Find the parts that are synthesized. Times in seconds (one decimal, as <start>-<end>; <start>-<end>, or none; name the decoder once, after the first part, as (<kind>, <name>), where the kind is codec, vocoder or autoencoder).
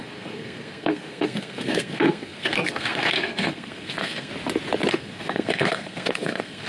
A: 0.0-4.3 (codec, SNAC); 4.9-6.7